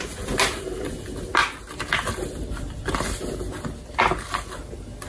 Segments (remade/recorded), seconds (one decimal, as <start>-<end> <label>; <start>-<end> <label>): 0.0-5.1 recorded